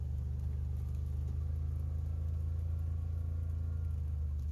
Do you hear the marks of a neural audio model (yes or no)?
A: no